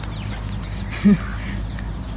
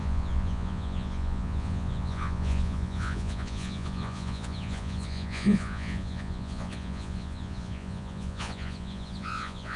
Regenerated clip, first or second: second